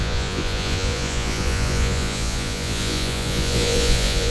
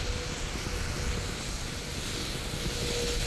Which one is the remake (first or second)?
first